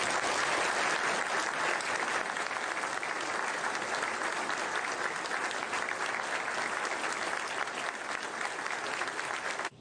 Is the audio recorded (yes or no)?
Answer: yes